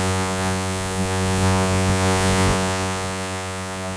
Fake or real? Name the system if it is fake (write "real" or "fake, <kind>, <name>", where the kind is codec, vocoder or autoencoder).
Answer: fake, vocoder, Vocos